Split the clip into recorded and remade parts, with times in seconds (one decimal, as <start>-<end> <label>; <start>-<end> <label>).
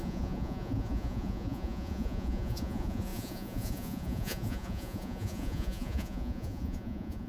0.0-7.3 remade